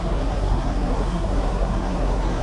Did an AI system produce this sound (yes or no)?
yes